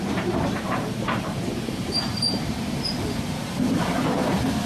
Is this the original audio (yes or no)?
no